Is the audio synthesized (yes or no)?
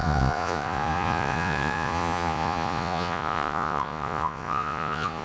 yes